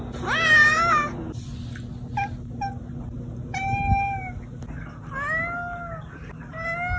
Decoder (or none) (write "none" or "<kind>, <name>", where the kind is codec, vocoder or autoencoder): none